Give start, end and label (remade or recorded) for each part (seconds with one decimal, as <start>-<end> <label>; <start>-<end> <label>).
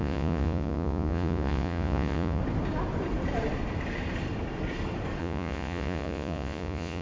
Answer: 0.0-2.4 remade; 2.4-5.2 recorded; 5.2-7.0 remade